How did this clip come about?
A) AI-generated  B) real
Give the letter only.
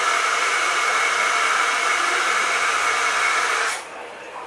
A